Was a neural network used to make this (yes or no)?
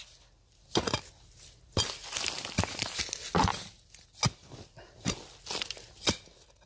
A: no